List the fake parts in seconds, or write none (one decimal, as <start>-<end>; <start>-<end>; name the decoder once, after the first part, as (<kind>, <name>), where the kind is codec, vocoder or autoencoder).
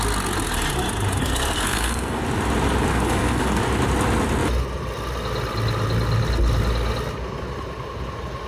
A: 1.2-2.2 (codec, SNAC); 2.9-3.6